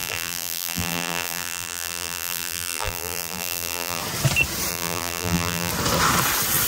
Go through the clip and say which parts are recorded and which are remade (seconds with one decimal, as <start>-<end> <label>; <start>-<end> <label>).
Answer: 0.0-4.0 remade; 4.0-4.7 recorded; 4.7-5.7 remade; 5.7-6.7 recorded